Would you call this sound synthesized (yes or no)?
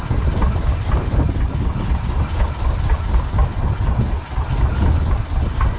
no